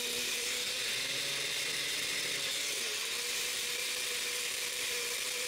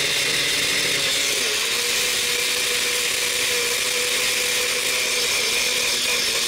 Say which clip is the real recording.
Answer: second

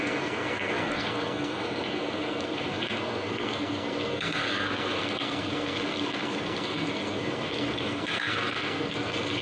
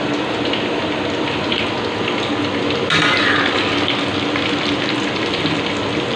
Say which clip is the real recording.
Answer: second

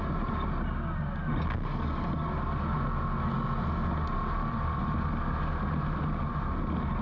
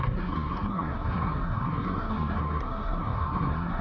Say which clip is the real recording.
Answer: first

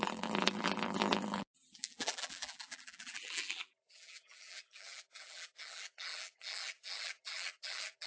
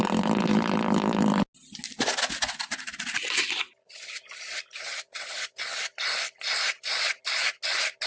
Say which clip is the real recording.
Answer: second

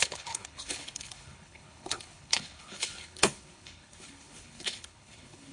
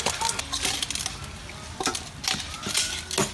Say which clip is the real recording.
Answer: second